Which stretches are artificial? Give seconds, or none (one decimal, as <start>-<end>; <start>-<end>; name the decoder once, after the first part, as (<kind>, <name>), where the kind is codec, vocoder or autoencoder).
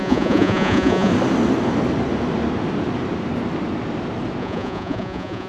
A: 0.0-1.1 (vocoder, Vocos); 4.4-5.5